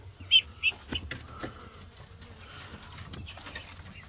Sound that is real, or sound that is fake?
real